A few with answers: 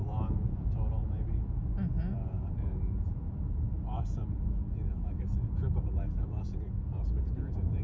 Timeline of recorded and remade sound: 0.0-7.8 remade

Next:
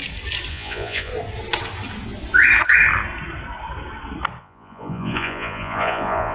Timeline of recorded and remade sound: 0.0-0.5 recorded; 0.5-1.1 remade; 1.1-4.4 recorded; 4.4-6.3 remade